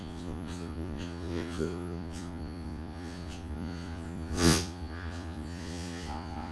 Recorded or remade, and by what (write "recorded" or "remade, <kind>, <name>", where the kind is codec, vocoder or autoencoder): remade, vocoder, Vocos